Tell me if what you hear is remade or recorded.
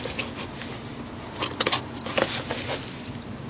recorded